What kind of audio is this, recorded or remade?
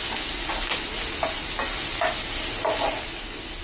recorded